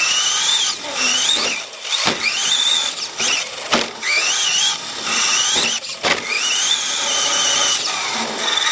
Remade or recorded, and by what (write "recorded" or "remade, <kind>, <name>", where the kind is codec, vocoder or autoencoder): recorded